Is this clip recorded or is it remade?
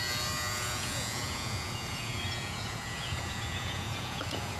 remade